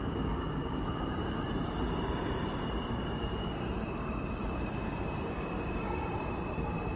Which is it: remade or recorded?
remade